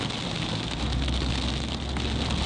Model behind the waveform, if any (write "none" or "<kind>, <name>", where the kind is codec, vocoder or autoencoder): none